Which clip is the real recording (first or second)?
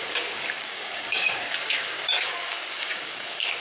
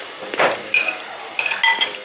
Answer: second